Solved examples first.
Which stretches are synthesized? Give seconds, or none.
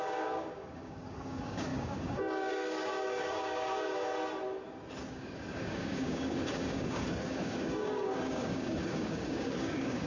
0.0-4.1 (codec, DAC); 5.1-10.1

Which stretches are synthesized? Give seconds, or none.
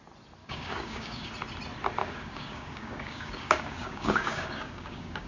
0.4-1.3 (codec, DAC); 2.0-5.3